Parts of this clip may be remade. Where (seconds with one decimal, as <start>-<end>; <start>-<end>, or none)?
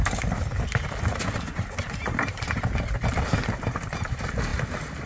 none